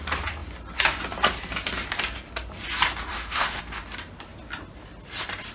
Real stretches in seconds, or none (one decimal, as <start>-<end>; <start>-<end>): 0.0-3.1; 3.6-5.5